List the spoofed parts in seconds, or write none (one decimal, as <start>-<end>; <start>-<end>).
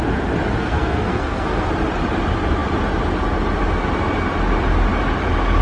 0.6-1.7